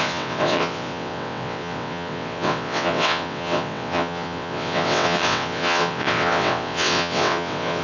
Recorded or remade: remade